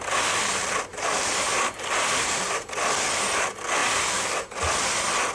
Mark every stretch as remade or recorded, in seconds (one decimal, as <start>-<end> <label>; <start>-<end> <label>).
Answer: 0.0-0.9 recorded; 0.9-2.5 remade; 2.5-5.3 recorded